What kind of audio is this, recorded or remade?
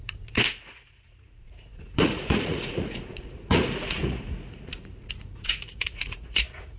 remade